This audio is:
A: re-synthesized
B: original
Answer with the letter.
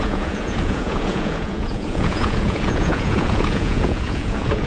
A